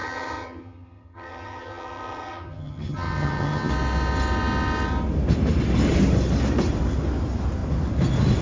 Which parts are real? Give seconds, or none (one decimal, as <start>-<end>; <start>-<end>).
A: 3.7-8.4